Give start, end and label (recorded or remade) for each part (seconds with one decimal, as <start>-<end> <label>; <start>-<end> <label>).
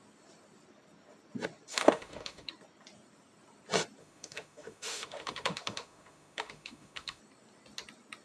0.0-1.7 recorded; 1.7-2.5 remade; 2.5-4.0 recorded; 4.0-7.2 remade; 7.2-8.2 recorded